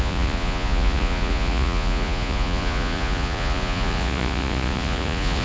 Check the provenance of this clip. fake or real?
fake